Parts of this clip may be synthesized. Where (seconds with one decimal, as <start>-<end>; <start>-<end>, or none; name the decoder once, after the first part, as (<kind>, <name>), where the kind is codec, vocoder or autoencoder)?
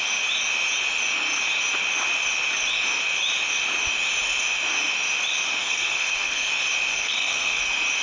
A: 5.6-6.5 (codec, SNAC); 6.9-7.6